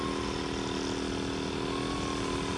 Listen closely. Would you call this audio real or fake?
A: real